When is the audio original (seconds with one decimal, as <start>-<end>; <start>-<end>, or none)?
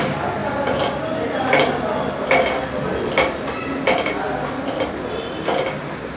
0.0-6.2